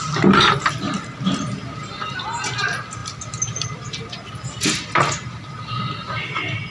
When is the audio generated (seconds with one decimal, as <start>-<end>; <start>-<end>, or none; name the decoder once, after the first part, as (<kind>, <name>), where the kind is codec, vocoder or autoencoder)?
none